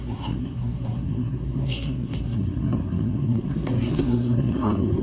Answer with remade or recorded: remade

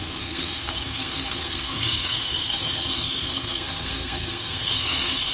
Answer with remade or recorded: remade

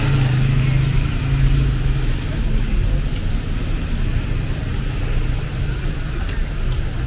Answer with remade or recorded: recorded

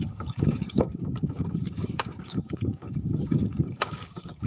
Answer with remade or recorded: remade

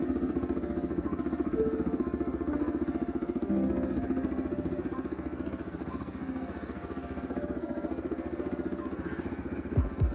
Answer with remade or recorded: remade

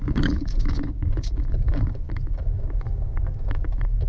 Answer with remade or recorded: remade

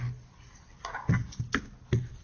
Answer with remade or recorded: recorded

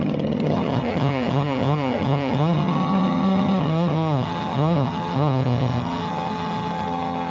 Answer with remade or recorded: remade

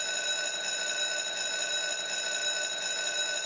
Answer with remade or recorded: recorded